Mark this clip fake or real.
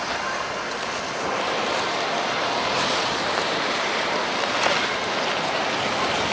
real